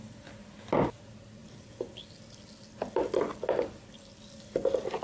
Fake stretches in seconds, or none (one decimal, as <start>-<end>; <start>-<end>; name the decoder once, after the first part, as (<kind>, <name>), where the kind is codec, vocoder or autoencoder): none